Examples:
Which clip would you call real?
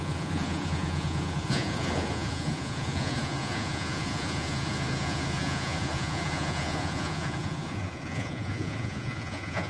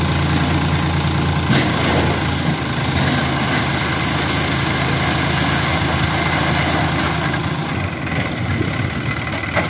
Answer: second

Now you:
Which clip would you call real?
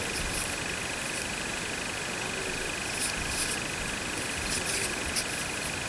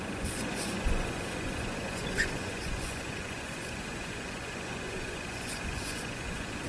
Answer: first